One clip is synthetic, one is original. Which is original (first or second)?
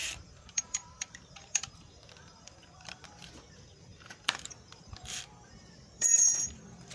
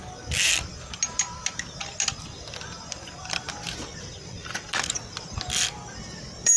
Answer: second